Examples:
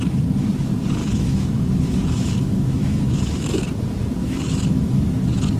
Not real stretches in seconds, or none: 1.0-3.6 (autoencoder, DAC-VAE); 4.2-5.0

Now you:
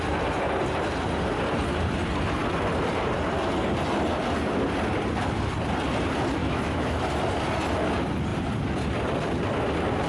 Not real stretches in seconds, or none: 6.4-7.0 (autoencoder, DAC-VAE)

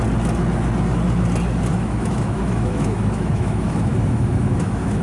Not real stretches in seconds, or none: 1.7-5.0 (autoencoder, DAC-VAE)